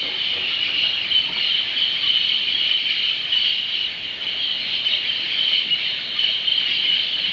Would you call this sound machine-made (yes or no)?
no